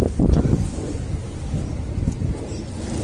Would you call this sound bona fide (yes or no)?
yes